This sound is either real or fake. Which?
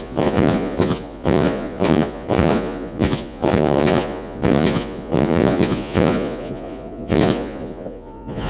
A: fake